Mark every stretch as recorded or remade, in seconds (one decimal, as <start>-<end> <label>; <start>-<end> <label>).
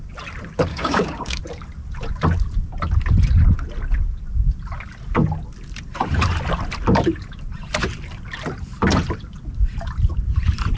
0.0-0.7 recorded; 0.7-1.4 remade; 1.4-10.8 recorded